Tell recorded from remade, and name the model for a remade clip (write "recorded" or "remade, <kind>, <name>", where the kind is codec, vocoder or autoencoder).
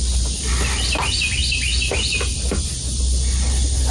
recorded